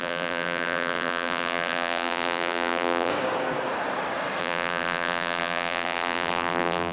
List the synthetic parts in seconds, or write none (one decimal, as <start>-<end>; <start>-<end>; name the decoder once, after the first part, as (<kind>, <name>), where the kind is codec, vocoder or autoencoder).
0.0-3.1 (vocoder, BigVGAN v2); 4.4-6.9